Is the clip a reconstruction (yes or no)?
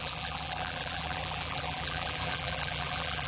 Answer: yes